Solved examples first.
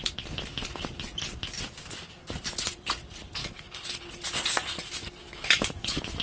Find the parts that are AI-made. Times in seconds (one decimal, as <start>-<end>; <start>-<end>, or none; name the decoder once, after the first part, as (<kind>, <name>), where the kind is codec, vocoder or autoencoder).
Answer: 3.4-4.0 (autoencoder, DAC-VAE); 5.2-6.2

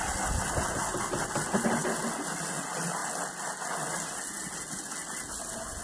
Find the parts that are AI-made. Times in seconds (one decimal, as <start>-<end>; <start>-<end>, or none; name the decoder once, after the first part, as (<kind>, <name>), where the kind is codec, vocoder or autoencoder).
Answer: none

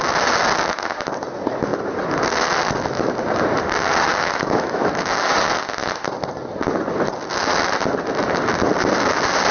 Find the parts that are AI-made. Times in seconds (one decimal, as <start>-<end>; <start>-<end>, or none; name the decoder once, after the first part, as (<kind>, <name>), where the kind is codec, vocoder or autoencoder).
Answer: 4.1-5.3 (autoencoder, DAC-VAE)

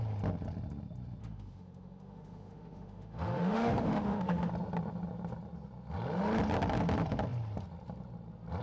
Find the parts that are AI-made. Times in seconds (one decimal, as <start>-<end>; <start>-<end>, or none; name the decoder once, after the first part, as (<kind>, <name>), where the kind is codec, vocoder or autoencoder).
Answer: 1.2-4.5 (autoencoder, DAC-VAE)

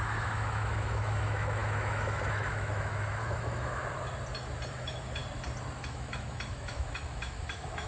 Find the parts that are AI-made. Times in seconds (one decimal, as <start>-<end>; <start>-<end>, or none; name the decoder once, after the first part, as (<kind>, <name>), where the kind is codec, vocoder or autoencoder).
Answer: 0.0-3.8 (autoencoder, DAC-VAE); 4.7-5.2; 5.8-7.9

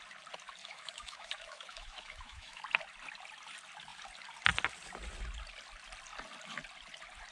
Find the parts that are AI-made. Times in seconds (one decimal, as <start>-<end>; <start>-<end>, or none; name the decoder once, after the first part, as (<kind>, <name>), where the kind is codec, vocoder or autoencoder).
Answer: 0.6-2.6 (autoencoder, DAC-VAE)